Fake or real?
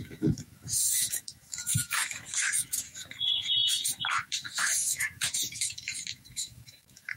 fake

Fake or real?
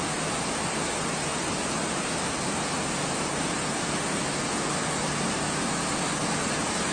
real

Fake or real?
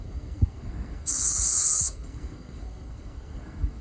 fake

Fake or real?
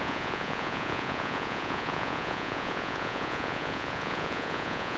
fake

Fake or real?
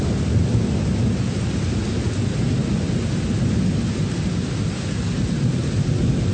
real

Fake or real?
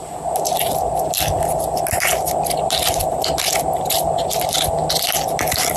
real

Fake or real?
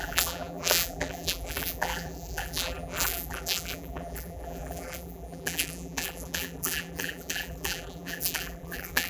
fake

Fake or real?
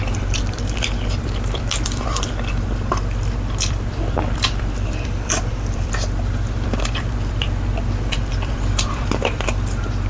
fake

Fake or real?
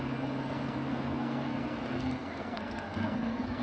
fake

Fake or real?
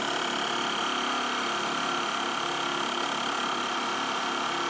real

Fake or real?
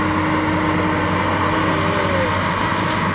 real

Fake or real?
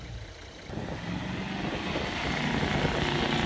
real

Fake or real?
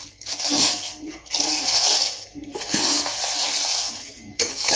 fake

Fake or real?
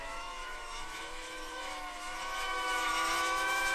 fake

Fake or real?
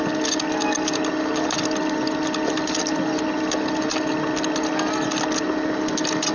real